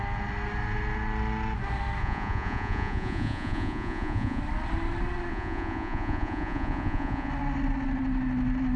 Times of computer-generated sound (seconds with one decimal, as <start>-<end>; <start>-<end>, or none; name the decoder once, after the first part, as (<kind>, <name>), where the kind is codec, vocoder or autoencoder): 2.0-4.4 (vocoder, Vocos); 5.3-7.3